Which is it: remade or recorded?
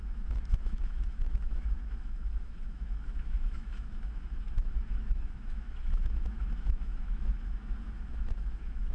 remade